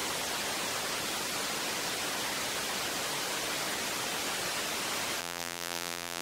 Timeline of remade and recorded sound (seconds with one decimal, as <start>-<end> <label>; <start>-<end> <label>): 0.0-5.2 recorded; 5.2-6.2 remade

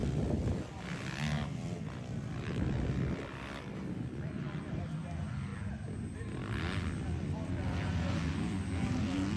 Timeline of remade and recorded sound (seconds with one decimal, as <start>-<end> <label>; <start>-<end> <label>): 0.0-9.4 recorded